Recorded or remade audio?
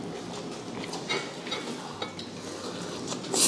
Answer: recorded